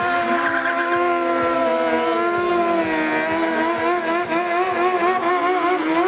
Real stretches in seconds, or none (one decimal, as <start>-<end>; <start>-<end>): 0.0-6.1